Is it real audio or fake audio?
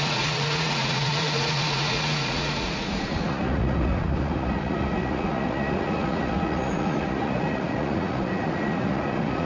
fake